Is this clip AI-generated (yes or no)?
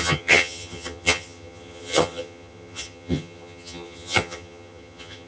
yes